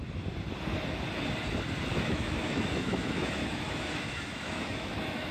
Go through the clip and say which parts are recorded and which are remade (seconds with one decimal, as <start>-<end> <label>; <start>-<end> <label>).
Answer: 0.0-1.9 recorded; 1.9-5.3 remade